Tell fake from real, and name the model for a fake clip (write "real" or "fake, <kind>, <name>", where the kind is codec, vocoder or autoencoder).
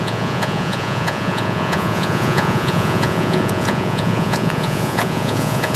fake, vocoder, Vocos